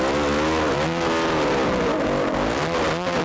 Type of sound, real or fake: real